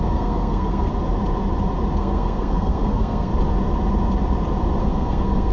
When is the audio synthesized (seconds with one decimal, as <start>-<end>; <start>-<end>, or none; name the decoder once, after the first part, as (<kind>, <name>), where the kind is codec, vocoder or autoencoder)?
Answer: 0.0-0.9 (codec, SNAC); 2.0-3.3; 4.8-5.5